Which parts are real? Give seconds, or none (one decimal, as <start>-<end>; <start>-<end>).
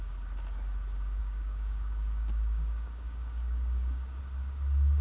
0.0-1.2; 4.2-5.0